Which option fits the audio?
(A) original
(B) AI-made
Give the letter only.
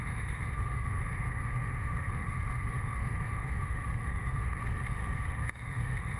B